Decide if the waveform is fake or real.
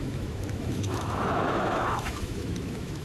fake